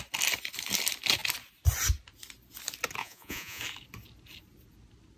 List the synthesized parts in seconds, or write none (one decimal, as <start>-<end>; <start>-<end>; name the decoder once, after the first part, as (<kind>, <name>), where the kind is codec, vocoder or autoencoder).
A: 3.0-3.6 (vocoder, Vocos)